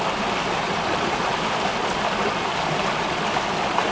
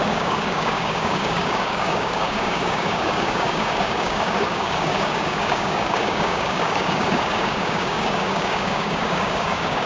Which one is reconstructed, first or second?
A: second